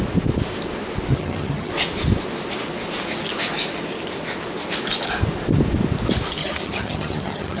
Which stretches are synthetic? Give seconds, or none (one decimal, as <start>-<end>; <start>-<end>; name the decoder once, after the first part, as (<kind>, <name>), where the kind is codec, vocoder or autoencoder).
1.1-1.7 (vocoder, HiFi-GAN); 6.4-7.6